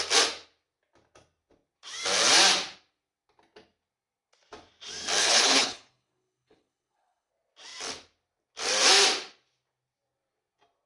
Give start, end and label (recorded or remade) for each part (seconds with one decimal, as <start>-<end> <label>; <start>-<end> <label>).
0.0-5.2 recorded; 5.2-7.3 remade; 7.3-10.9 recorded